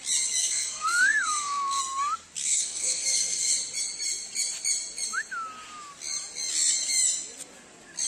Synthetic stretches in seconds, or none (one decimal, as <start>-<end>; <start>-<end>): 0.4-1.8; 2.4-3.5